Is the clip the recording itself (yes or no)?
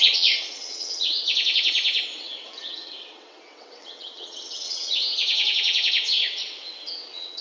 no